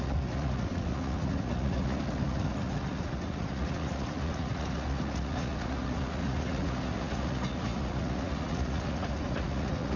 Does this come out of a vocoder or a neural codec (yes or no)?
yes